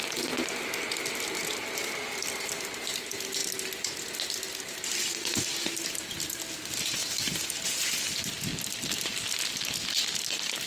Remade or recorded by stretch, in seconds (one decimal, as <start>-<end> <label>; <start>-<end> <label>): 0.0-10.7 recorded